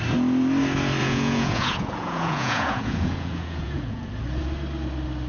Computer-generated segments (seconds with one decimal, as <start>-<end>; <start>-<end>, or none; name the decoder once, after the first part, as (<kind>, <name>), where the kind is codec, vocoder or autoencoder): 1.0-4.1 (vocoder, Vocos)